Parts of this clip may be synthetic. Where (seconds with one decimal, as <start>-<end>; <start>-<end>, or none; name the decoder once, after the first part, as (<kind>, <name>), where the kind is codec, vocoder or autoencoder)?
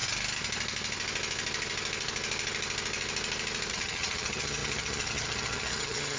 3.7-6.2 (vocoder, HiFi-GAN)